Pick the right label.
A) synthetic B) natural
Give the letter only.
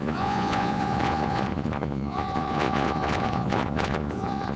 A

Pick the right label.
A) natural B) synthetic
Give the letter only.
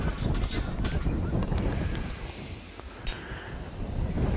A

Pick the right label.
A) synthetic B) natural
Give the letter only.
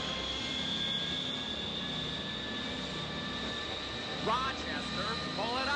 B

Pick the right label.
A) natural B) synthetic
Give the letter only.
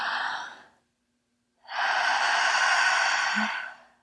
A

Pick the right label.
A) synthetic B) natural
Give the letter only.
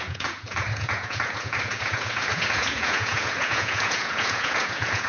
A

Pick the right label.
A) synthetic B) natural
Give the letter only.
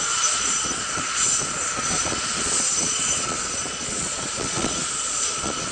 A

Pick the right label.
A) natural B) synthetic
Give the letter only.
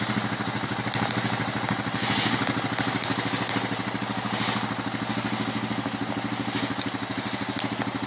A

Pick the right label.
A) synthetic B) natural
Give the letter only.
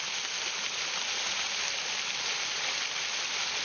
B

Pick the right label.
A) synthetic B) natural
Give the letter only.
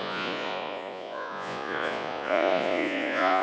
A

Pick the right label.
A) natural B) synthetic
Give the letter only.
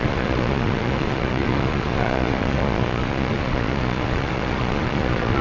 B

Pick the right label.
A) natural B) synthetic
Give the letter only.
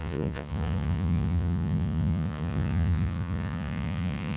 B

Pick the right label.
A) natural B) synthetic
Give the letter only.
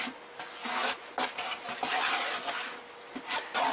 A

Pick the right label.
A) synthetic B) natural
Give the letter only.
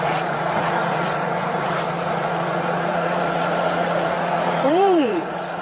A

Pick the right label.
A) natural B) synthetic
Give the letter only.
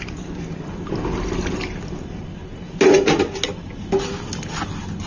A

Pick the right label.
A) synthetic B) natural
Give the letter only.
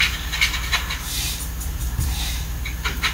B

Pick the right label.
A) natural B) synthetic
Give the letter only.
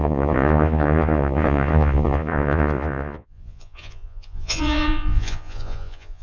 B